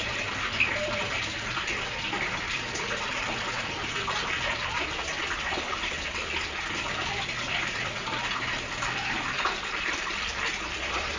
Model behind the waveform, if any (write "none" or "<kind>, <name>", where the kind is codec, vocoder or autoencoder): none